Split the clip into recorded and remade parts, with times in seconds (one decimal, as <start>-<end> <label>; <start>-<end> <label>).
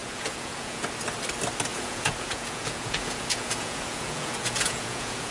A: 0.0-0.8 remade; 0.8-1.7 recorded; 1.7-5.3 remade